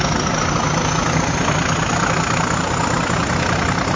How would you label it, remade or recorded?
recorded